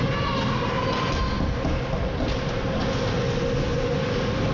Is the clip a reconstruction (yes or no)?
no